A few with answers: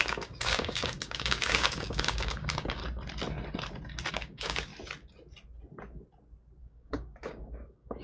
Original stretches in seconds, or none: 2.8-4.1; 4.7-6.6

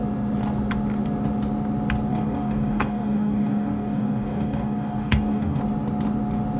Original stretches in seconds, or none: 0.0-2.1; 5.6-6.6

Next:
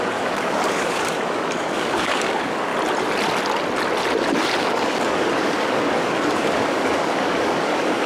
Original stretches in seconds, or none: 2.7-4.6

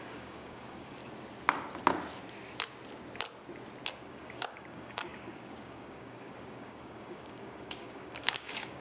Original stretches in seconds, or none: 1.0-3.9

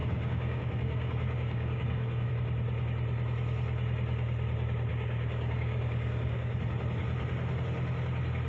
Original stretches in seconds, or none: 2.3-4.9; 6.6-8.5

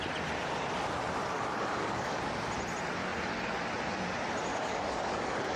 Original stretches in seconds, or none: 0.0-1.2; 2.2-4.5

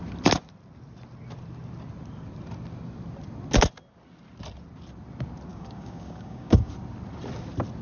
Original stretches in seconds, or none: 0.0-5.5; 6.7-7.8

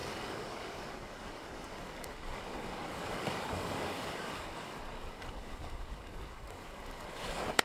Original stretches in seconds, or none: none